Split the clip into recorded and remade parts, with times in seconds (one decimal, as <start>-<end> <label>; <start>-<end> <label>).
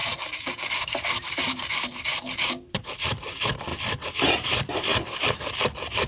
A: 0.0-0.7 recorded; 0.7-4.9 remade; 4.9-6.1 recorded